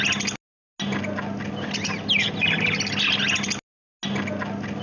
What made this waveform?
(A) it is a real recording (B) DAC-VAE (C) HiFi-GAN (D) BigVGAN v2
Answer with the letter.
A